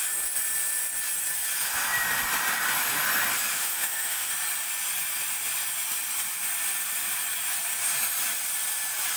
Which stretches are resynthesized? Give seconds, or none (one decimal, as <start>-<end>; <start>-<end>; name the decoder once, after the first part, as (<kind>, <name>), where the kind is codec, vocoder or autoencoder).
3.5-4.3 (autoencoder, DAC-VAE)